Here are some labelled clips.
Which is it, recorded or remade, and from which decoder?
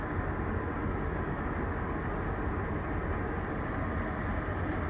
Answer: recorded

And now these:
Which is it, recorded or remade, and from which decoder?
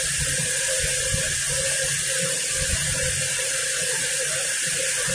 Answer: recorded